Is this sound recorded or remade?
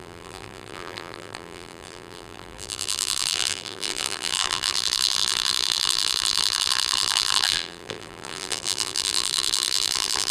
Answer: remade